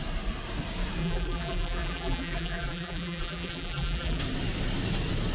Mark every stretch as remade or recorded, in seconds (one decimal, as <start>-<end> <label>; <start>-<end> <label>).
0.0-1.0 recorded; 1.0-4.2 remade; 4.2-5.3 recorded